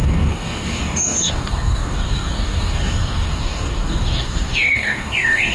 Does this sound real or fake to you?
fake